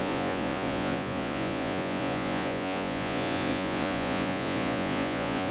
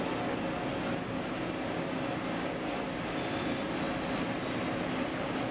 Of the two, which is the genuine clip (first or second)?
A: second